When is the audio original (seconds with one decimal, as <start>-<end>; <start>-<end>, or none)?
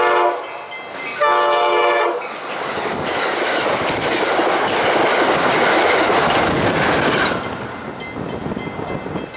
0.0-5.1; 5.7-9.4